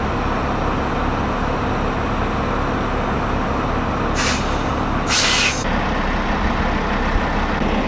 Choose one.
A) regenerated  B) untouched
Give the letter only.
B